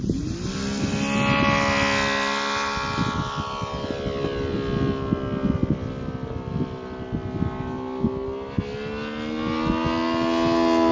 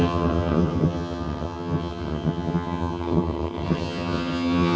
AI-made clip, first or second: second